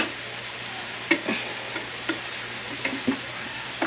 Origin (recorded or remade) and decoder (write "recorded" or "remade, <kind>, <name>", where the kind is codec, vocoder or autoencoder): recorded